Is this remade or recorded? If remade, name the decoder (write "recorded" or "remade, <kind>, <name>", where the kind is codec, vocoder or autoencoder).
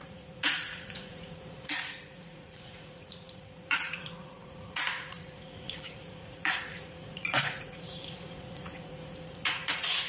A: remade, vocoder, Vocos